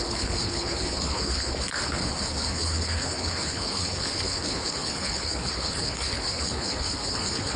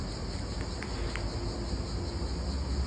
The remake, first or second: first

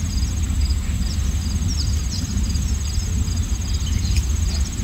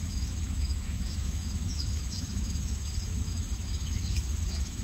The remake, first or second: second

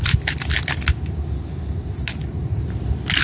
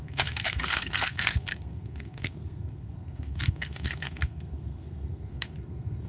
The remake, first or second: second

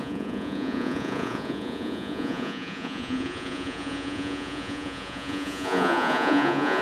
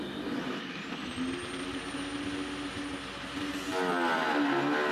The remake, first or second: first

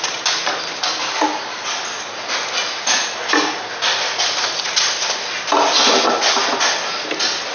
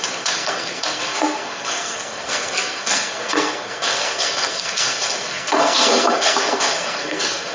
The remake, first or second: second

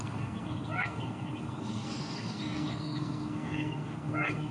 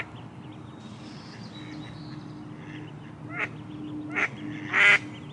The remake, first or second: first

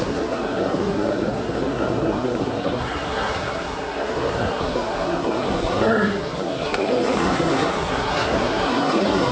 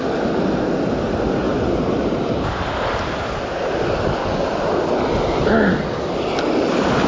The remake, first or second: first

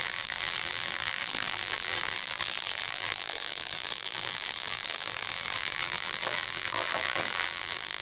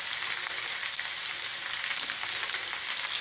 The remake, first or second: first